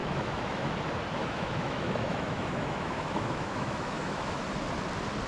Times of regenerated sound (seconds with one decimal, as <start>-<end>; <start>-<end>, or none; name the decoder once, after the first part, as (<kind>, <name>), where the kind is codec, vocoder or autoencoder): 0.0-0.7 (autoencoder, DAC-VAE); 1.2-4.4